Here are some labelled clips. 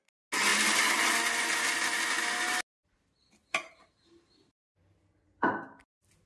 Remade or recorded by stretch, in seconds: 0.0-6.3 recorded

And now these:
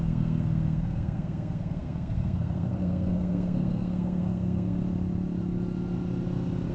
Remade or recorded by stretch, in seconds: 0.0-4.8 remade; 4.8-6.7 recorded

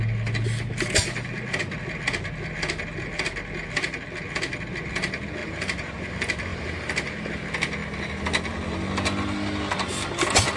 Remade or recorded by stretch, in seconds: 0.0-5.4 recorded; 5.4-6.1 remade; 6.1-6.5 recorded; 6.5-7.3 remade; 7.3-10.6 recorded